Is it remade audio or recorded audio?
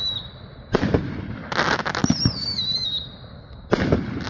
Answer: recorded